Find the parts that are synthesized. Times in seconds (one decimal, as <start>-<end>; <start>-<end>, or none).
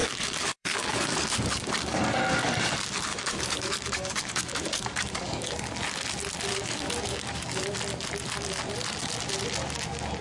0.0-2.0; 3.1-5.5; 6.5-7.6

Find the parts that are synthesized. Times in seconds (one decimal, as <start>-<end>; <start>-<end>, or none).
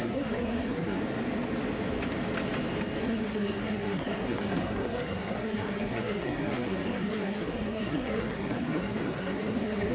0.0-1.0; 3.0-9.9